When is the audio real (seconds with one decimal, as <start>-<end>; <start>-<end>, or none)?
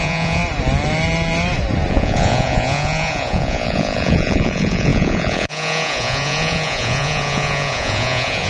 0.4-1.9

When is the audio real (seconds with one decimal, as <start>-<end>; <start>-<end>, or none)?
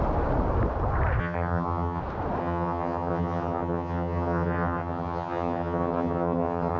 0.0-1.2; 2.0-2.4